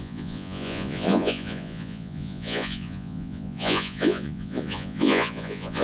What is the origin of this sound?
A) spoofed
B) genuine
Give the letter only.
A